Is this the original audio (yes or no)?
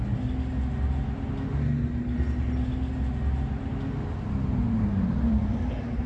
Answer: yes